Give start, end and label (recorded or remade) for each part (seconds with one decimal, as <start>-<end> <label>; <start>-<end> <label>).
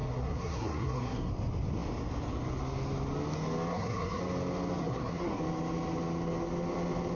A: 0.0-1.3 remade; 1.3-3.7 recorded; 3.7-4.2 remade; 4.2-4.8 recorded; 4.8-5.4 remade; 5.4-7.1 recorded